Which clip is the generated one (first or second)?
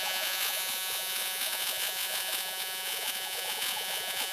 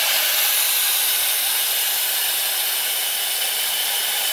first